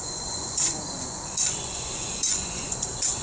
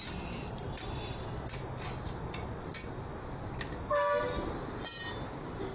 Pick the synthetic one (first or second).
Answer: first